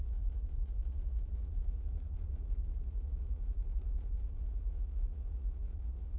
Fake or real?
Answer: fake